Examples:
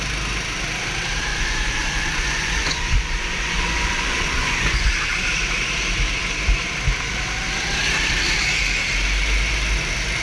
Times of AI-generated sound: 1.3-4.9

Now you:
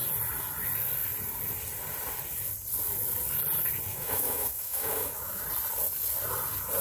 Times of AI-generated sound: 3.9-5.4

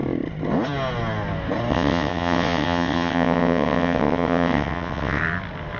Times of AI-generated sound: 1.7-5.2

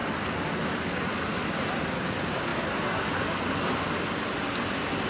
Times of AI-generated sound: none

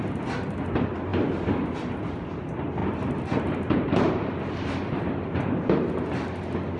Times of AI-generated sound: 2.8-4.4

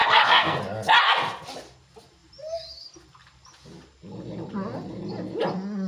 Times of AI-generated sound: 0.0-0.6

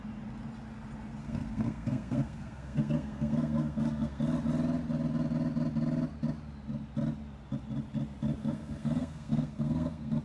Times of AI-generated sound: 1.2-4.2; 8.4-10.2

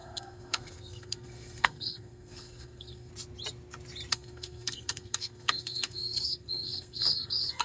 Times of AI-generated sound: 0.0-3.1; 4.1-7.6